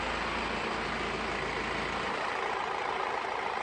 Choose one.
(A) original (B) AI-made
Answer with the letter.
A